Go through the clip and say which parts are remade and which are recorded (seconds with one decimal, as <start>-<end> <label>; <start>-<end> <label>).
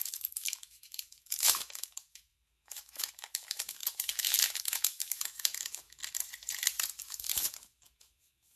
0.0-6.0 remade; 6.0-7.0 recorded; 7.0-8.6 remade